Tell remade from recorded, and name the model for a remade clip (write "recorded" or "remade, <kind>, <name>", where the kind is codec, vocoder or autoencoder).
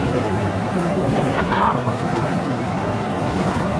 remade, codec, SNAC